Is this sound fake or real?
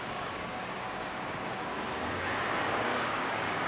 fake